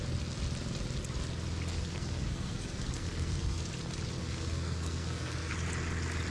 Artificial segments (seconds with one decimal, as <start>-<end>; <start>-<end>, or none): 1.7-3.6; 4.2-5.5